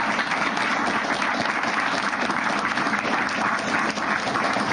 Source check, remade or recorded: recorded